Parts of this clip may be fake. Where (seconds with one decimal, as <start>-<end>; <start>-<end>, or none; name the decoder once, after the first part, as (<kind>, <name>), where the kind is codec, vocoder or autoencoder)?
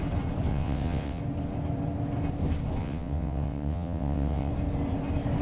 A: 0.5-1.2 (vocoder, WaveNeXt); 2.8-4.5